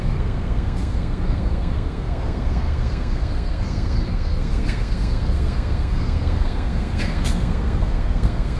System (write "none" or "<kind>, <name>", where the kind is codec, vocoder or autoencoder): codec, SNAC